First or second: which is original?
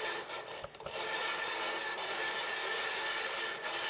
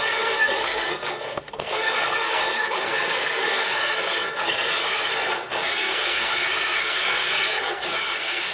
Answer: first